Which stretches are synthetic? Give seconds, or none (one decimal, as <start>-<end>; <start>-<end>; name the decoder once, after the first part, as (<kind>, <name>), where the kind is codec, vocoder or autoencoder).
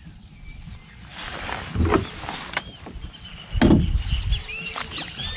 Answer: none